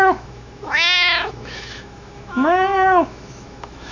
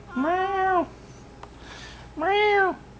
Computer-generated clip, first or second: first